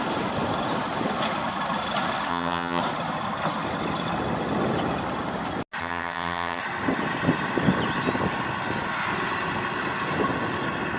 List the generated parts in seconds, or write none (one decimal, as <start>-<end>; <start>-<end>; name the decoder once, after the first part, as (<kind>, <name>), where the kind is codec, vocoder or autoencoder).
2.3-2.8 (vocoder, HiFi-GAN); 5.8-6.6